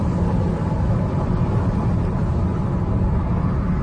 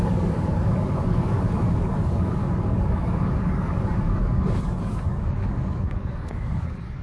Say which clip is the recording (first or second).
first